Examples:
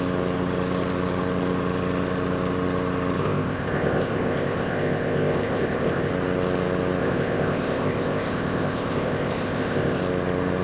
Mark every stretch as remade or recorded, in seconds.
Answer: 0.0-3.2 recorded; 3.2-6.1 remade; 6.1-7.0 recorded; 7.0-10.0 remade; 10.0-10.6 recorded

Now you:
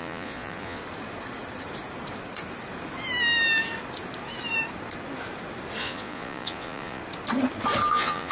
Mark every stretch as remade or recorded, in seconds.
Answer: 0.0-0.8 remade; 0.8-5.8 recorded; 5.8-7.0 remade; 7.0-7.9 recorded; 7.9-8.3 remade